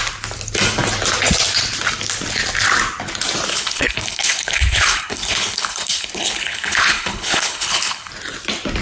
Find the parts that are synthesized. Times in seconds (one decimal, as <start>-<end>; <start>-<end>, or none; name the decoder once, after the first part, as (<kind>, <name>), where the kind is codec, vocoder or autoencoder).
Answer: 3.5-8.1 (codec, HILCodec)

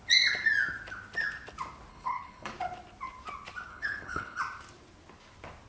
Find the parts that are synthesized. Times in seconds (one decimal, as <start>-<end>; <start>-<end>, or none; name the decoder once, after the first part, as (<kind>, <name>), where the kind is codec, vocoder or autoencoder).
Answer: 1.9-2.5 (codec, HILCodec); 3.7-4.4

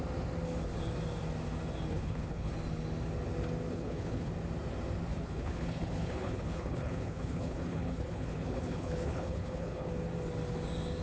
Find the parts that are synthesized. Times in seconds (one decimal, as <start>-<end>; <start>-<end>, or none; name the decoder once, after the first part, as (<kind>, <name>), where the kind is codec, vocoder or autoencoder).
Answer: 1.9-2.5 (codec, HILCodec); 3.7-4.3; 5.1-9.9